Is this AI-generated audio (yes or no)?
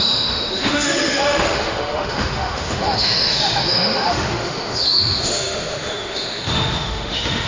yes